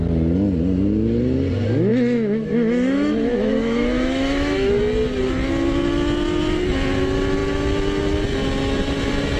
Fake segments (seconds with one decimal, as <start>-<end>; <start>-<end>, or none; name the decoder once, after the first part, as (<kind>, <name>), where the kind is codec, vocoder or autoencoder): 1.9-4.8 (autoencoder, DAC-VAE)